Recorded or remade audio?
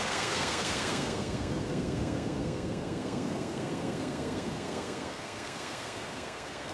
remade